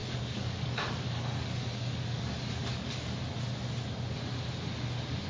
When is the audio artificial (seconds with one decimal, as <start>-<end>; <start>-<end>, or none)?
0.0-3.2